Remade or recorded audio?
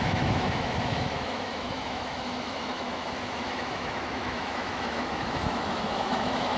remade